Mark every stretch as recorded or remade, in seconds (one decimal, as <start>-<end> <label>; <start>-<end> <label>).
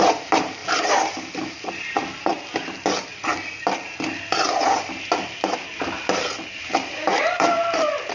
0.0-0.6 remade; 0.6-1.6 recorded; 1.6-2.3 remade; 2.3-6.5 recorded; 6.5-8.1 remade